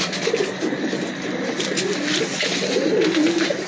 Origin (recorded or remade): remade